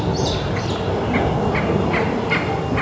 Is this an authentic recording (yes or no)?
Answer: yes